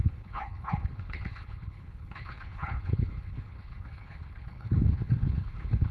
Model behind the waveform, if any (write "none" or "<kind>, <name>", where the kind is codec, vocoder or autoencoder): codec, HILCodec